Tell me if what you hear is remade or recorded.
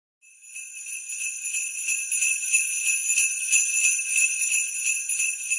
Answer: recorded